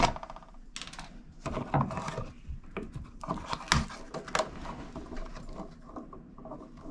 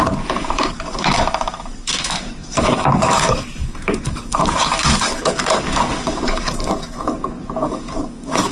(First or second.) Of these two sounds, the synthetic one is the second